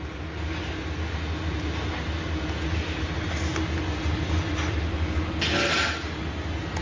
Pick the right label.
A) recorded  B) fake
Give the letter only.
A